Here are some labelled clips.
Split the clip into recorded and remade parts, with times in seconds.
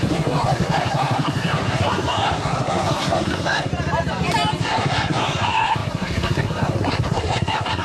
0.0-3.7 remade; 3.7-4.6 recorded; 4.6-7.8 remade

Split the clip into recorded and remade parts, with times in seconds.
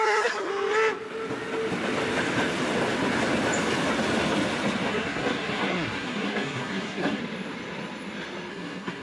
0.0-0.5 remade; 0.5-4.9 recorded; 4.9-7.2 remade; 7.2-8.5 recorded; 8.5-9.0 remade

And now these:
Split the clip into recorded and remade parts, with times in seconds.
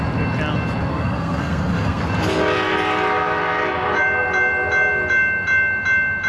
0.0-0.9 recorded; 0.9-2.0 remade; 2.0-6.3 recorded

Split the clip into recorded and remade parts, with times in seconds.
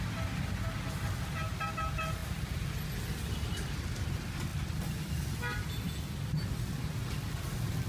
0.0-7.9 recorded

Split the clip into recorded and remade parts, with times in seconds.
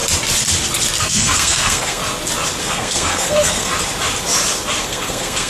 0.0-1.0 recorded; 1.0-2.0 remade; 2.0-2.6 recorded; 2.6-3.7 remade; 3.7-4.8 recorded; 4.8-5.5 remade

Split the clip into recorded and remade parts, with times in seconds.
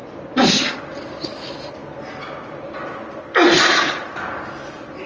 0.0-5.1 recorded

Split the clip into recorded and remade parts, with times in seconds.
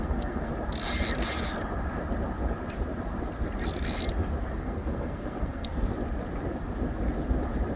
0.0-0.5 remade; 0.5-4.5 recorded; 4.5-5.9 remade; 5.9-7.8 recorded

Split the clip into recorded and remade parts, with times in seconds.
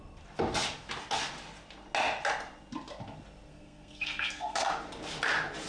0.0-3.5 recorded; 3.5-4.7 remade; 4.7-5.7 recorded